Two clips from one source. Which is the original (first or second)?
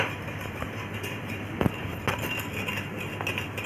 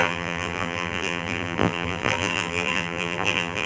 first